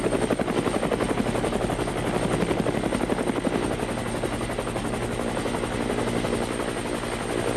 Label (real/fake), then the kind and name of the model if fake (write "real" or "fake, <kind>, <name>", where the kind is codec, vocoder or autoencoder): real